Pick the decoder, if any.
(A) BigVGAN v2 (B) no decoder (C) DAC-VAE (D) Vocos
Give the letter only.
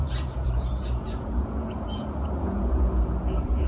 D